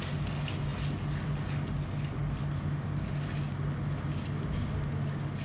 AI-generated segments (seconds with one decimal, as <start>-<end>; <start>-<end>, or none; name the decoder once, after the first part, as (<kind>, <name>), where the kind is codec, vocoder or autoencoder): none